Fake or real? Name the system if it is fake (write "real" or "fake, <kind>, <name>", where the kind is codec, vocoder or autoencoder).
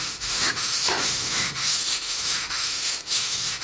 fake, autoencoder, DAC-VAE